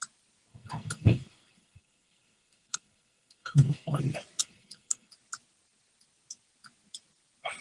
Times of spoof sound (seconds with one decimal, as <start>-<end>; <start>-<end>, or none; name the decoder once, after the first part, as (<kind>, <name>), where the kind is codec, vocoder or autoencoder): 0.5-4.0 (codec, SNAC); 4.4-5.1

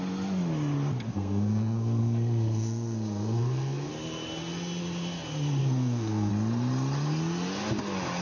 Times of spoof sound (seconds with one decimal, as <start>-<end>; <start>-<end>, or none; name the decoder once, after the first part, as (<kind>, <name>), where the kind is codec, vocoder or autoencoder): 1.1-3.9 (codec, SNAC); 5.6-6.3

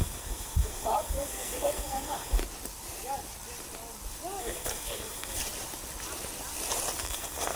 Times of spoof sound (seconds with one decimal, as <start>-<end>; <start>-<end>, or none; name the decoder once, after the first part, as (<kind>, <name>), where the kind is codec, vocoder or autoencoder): 0.0-2.4 (codec, SNAC); 4.4-5.4; 7.0-7.6

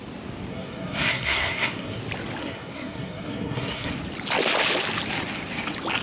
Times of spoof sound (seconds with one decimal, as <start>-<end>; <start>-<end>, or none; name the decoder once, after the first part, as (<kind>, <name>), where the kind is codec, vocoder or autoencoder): 0.5-2.0 (codec, SNAC); 2.4-3.9